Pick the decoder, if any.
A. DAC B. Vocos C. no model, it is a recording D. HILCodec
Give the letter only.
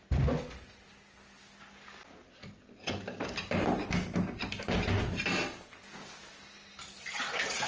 C